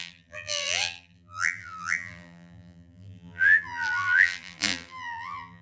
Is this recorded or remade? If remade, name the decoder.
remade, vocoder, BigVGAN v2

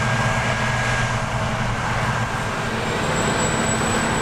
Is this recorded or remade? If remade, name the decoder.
recorded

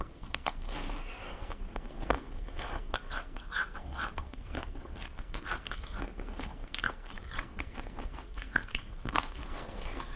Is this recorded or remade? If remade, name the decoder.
remade, codec, SNAC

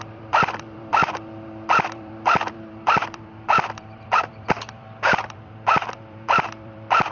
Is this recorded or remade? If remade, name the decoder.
remade, vocoder, BigVGAN v2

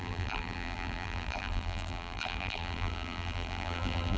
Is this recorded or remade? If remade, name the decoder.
remade, vocoder, BigVGAN v2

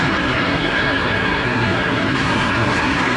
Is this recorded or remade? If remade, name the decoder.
remade, codec, SNAC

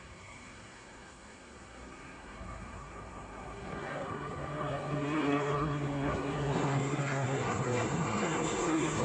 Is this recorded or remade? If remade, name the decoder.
remade, codec, SNAC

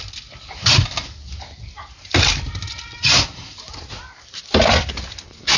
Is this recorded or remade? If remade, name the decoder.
recorded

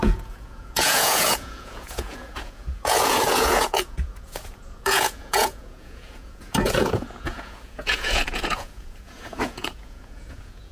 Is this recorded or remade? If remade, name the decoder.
remade, vocoder, Vocos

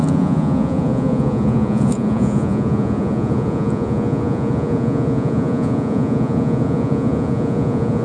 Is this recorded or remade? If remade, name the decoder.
remade, vocoder, Vocos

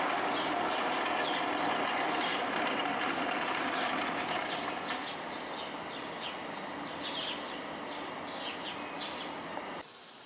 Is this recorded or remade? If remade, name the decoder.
recorded